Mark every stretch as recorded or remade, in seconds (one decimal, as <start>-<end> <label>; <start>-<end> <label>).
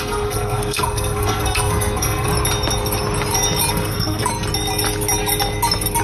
0.0-2.3 remade; 2.3-3.7 recorded; 3.7-4.3 remade; 4.3-6.0 recorded